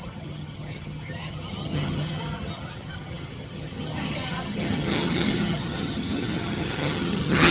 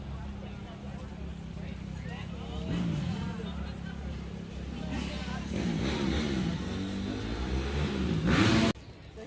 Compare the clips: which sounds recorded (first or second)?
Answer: second